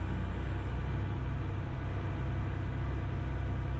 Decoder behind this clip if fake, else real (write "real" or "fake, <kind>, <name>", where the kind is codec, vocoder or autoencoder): real